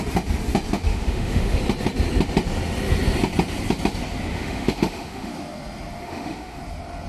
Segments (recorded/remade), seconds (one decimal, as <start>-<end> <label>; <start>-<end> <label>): 0.0-0.9 recorded; 0.9-1.6 remade; 1.6-4.3 recorded; 4.3-5.3 remade; 5.3-6.0 recorded; 6.0-6.6 remade; 6.6-7.1 recorded